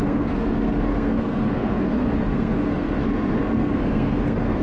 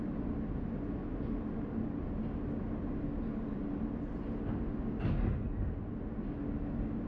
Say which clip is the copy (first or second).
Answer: first